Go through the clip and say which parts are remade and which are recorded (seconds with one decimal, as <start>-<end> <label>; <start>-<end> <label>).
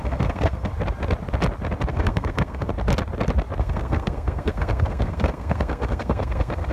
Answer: 0.0-0.7 remade; 0.7-1.9 recorded; 1.9-2.7 remade; 2.7-3.6 recorded; 3.6-6.7 remade